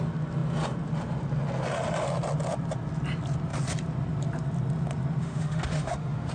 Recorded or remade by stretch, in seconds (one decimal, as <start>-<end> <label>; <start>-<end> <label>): 0.0-5.2 recorded; 5.2-6.3 remade

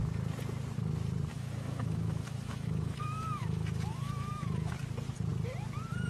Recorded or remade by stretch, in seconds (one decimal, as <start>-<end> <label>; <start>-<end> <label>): 0.0-1.3 recorded; 1.3-4.7 remade; 4.7-6.1 recorded

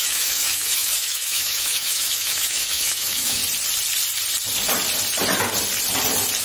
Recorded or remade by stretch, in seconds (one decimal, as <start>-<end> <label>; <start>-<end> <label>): 0.0-3.4 remade; 3.4-6.4 recorded

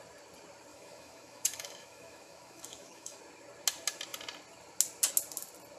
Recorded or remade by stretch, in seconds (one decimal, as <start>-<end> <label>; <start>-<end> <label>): 0.0-0.7 recorded; 0.7-3.2 remade; 3.2-5.8 recorded